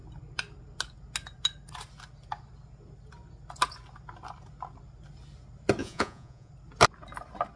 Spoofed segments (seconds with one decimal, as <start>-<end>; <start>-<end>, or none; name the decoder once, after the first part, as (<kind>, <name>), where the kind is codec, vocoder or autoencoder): 5.8-6.5 (vocoder, Vocos)